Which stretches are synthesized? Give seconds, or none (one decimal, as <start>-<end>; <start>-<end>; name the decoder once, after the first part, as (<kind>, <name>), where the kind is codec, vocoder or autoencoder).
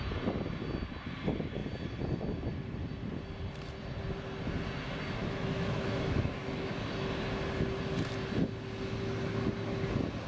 5.2-6.7 (autoencoder, DAC-VAE)